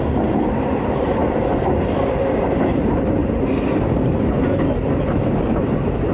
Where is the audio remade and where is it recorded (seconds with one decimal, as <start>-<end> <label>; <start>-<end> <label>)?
0.0-3.2 remade; 3.2-4.9 recorded; 4.9-6.1 remade